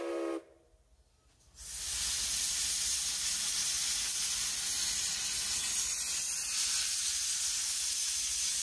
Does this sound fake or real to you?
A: real